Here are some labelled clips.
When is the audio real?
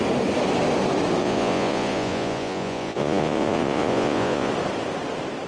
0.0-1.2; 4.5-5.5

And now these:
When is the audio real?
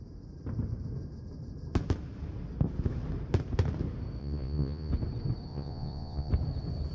0.0-4.2; 4.9-5.5; 6.3-6.9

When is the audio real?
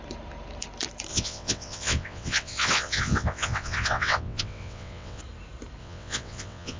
0.0-1.1; 5.2-5.8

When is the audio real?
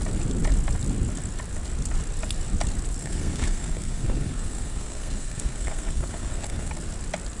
0.0-3.0; 6.7-7.4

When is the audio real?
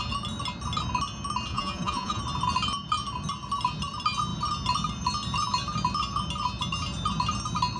0.0-1.5; 2.2-7.8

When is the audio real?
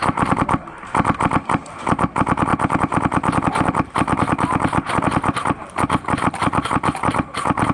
0.0-7.7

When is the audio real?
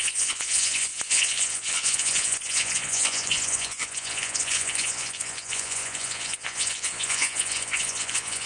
none